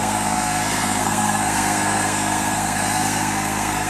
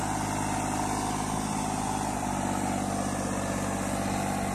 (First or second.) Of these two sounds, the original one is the second